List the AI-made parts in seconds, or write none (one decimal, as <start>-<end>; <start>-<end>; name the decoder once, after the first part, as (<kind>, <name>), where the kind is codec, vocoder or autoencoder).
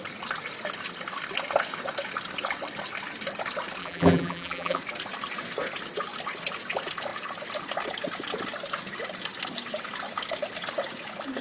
3.8-4.8 (vocoder, BigVGAN v2)